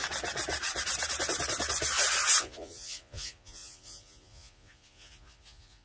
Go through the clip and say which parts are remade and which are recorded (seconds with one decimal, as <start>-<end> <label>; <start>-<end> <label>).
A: 0.0-2.4 recorded; 2.4-5.8 remade